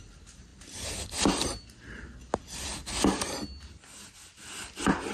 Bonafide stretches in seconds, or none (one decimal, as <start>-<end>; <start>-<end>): 0.0-5.1